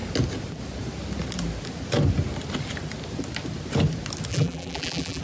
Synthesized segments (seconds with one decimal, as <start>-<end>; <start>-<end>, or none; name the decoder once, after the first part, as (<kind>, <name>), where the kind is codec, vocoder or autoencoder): 4.3-5.2 (vocoder, BigVGAN v2)